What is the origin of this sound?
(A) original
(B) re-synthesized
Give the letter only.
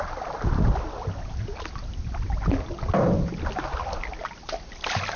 A